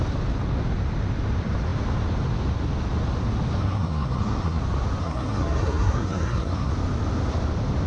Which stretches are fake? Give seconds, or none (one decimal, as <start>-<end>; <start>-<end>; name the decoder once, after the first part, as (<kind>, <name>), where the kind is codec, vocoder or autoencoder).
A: 3.6-4.6 (codec, SNAC); 5.0-6.7